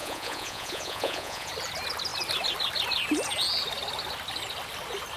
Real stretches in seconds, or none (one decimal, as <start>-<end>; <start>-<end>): 1.5-5.2